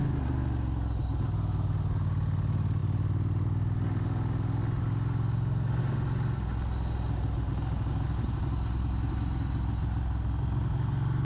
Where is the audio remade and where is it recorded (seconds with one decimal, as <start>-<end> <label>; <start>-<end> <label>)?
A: 0.0-11.2 recorded